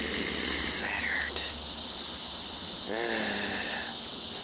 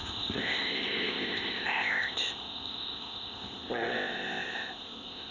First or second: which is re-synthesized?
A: second